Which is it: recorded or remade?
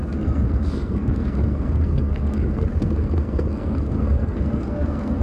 remade